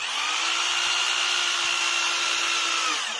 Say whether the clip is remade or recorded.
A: recorded